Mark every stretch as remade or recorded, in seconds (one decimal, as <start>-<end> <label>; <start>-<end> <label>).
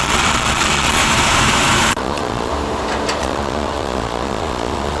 0.0-1.0 remade; 1.0-1.9 recorded; 1.9-2.5 remade; 2.5-3.2 recorded; 3.2-5.0 remade